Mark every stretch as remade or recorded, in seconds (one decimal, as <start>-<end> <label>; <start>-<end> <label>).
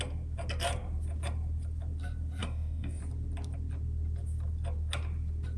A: 0.0-2.4 recorded; 2.4-3.0 remade; 3.0-5.6 recorded